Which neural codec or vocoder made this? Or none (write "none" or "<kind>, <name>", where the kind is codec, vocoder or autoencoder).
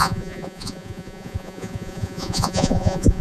vocoder, Vocos